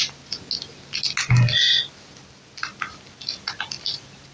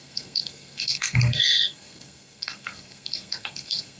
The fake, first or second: second